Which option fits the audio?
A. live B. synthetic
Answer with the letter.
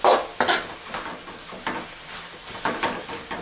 A